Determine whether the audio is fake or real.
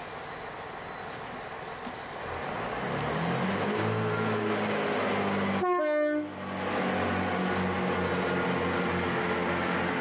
real